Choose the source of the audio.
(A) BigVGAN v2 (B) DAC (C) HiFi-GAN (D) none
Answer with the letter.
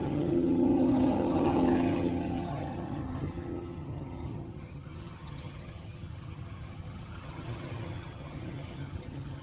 C